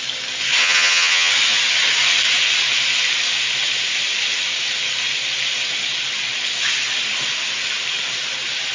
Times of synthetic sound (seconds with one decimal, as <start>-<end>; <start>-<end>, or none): 0.6-1.3